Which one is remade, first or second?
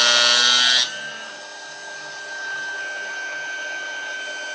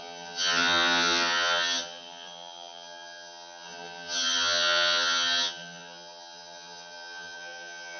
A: second